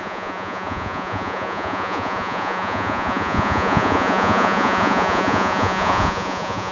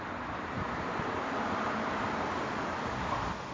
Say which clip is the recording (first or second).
second